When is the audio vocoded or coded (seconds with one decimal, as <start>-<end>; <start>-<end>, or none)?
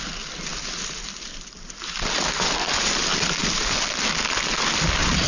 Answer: none